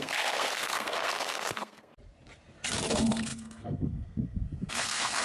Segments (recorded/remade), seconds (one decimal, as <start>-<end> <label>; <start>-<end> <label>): 0.0-1.9 remade; 1.9-2.9 recorded; 2.9-5.2 remade